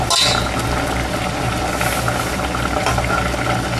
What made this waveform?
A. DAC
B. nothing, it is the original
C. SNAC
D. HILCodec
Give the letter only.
B